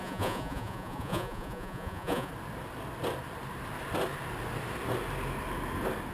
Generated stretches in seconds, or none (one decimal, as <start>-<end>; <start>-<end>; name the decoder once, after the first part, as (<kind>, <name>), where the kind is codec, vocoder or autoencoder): 0.0-2.3 (vocoder, Vocos)

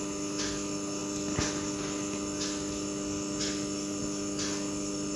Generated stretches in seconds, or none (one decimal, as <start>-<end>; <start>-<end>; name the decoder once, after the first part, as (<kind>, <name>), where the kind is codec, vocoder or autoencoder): none

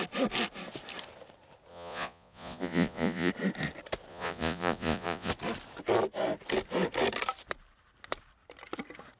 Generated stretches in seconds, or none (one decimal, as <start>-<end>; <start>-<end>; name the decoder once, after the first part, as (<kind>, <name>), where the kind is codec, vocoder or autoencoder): 1.7-3.3 (vocoder, Vocos); 4.1-5.3

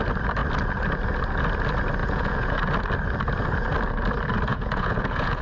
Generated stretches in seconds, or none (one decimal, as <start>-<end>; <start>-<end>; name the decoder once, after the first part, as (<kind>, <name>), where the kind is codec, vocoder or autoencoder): 2.0-2.6 (vocoder, Vocos); 4.5-5.4